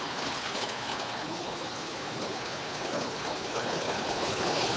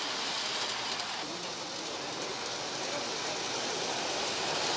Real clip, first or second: second